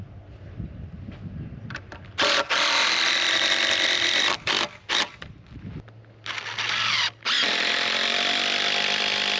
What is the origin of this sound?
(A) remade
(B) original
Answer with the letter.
B